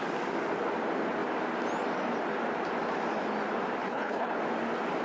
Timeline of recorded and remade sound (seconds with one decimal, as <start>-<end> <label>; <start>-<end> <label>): 0.0-3.8 recorded; 3.8-4.4 remade; 4.4-5.0 recorded